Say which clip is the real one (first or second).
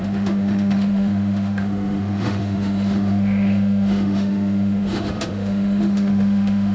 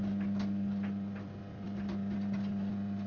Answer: second